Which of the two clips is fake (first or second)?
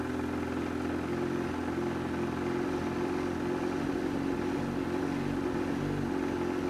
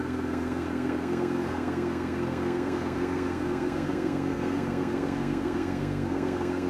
second